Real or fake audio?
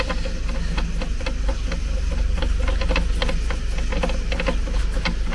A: real